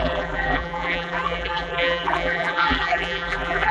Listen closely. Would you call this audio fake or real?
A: fake